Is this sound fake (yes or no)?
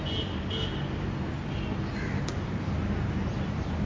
no